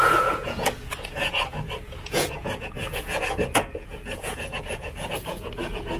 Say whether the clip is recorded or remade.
remade